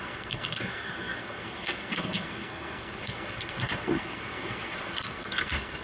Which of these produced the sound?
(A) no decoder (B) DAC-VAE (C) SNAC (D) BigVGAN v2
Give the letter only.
C